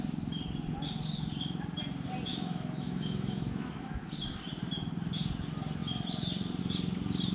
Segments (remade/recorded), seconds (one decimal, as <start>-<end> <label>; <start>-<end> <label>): 0.0-2.3 recorded; 2.3-4.1 remade; 4.1-7.3 recorded